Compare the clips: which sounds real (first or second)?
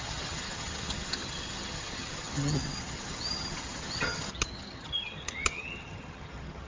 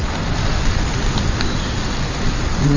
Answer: second